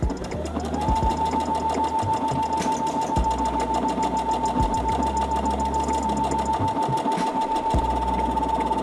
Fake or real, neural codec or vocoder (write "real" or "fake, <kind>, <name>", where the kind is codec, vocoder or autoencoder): real